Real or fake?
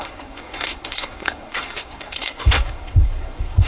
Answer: fake